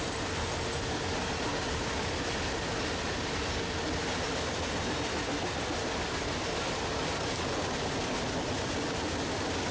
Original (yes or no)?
yes